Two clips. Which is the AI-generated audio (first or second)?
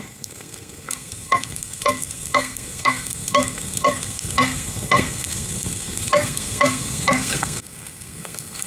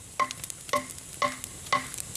first